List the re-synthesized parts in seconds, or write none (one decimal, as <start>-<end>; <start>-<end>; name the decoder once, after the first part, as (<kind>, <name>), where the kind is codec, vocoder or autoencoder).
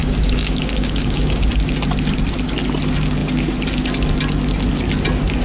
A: 0.0-1.5 (codec, DAC)